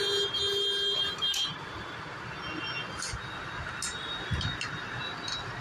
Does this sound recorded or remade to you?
recorded